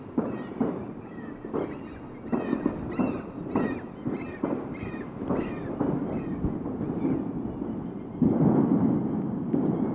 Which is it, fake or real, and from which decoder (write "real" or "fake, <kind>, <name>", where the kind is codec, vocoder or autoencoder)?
real